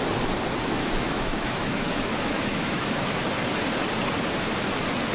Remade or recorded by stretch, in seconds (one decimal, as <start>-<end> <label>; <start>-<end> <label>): 0.0-0.8 recorded; 0.8-3.3 remade; 3.3-5.1 recorded